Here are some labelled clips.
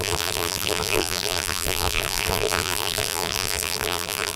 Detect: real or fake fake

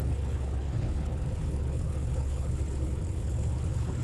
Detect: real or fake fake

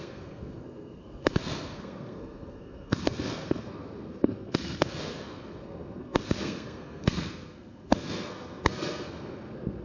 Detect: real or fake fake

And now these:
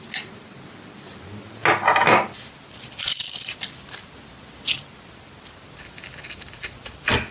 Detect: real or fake real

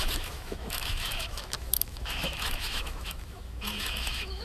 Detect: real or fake fake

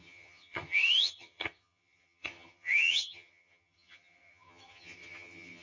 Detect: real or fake fake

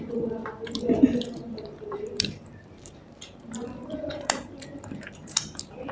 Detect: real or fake fake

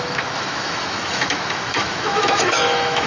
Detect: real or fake fake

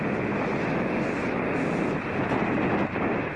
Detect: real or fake real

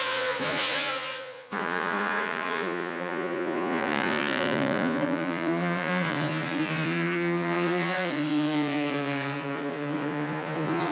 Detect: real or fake fake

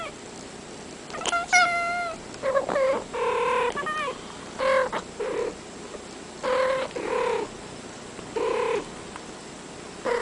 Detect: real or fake real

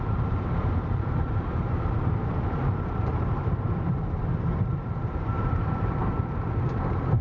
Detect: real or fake fake